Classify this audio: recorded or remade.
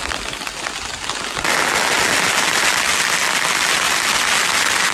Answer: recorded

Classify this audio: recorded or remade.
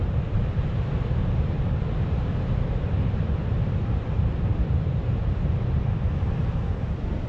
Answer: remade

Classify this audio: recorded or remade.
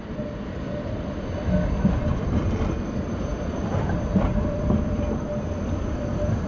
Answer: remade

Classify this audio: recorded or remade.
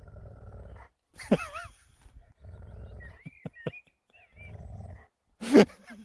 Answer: recorded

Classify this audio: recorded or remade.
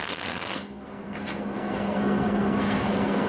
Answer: remade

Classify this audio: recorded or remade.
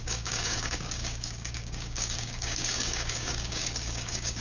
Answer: remade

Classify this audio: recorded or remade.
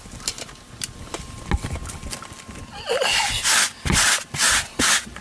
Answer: recorded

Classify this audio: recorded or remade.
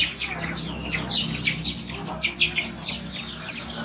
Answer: recorded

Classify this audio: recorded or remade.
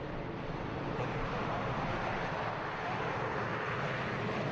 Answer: recorded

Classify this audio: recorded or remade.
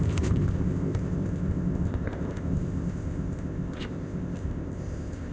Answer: remade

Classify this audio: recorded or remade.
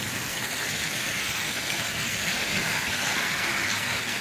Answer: remade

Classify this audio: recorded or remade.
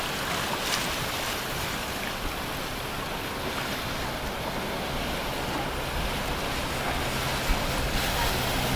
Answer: recorded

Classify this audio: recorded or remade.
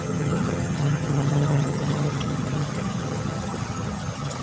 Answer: remade